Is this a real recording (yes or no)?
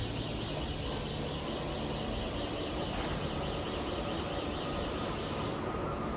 yes